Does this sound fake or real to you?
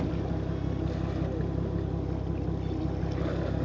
real